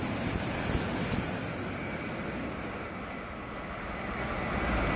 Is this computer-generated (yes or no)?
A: no